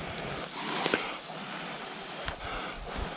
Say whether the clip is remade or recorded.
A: recorded